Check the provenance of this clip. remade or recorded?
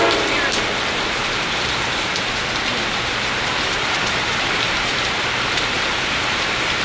remade